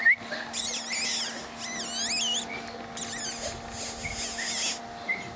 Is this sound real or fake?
real